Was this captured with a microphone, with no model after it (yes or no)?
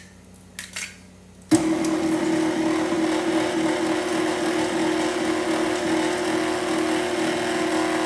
yes